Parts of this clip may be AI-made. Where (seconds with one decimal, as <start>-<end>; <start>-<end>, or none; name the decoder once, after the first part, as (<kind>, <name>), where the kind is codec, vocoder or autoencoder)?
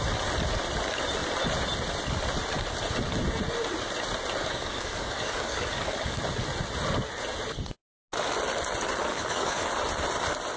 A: 4.4-6.2 (codec, DAC); 9.1-9.7